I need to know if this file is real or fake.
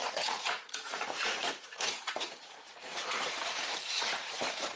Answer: fake